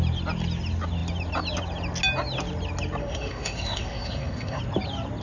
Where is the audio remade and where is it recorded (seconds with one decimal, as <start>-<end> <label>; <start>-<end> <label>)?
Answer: 0.0-3.0 recorded; 3.0-4.6 remade; 4.6-5.2 recorded